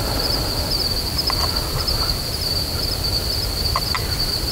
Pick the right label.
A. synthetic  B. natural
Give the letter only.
B